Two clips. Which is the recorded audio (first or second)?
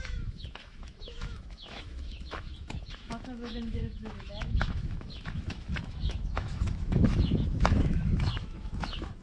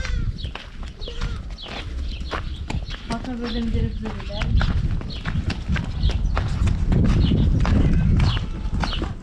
second